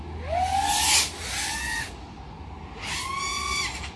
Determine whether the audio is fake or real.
real